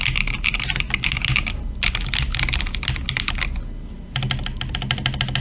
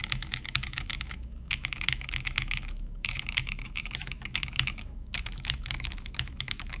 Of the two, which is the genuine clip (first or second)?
first